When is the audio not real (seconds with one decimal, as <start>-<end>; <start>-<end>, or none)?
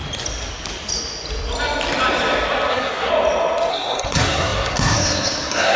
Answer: 2.7-3.1; 3.7-5.8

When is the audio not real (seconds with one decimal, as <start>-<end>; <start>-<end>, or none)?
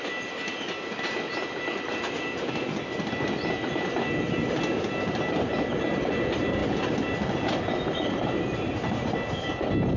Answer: none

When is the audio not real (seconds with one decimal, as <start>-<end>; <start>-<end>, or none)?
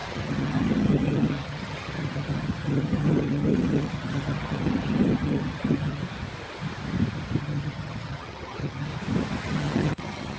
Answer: 0.0-6.0; 7.4-8.9; 9.4-10.4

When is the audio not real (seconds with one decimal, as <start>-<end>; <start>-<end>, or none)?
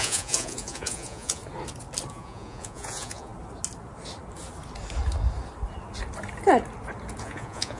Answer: 0.0-1.4; 2.1-3.3; 7.2-7.8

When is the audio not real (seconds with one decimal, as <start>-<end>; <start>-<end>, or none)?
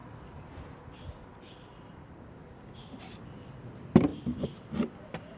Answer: none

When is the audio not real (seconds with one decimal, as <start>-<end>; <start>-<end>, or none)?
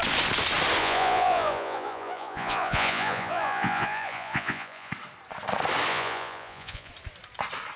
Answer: 0.8-4.9; 5.9-6.9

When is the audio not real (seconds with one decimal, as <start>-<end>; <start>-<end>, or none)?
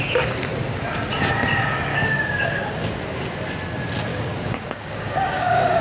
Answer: 1.9-3.0; 4.1-5.8